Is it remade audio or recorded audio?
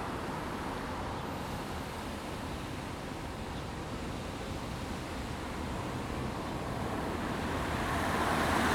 remade